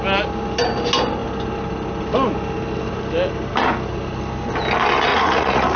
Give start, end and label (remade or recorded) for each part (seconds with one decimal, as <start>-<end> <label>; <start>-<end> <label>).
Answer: 0.0-5.1 recorded; 5.1-5.8 remade